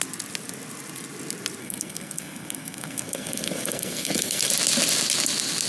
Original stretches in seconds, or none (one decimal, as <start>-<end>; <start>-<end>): 0.0-1.6; 4.5-5.7

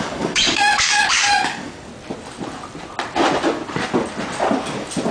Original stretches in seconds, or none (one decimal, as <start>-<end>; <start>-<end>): 1.9-5.1

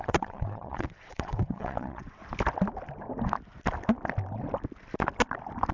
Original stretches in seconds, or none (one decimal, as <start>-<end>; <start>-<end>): 2.2-5.7

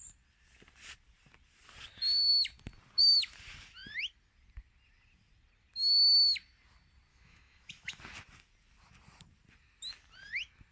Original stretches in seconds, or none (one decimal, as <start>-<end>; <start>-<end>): 0.0-7.1; 8.0-10.7

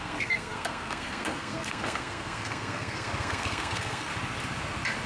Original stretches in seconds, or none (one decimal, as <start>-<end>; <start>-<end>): 4.1-5.1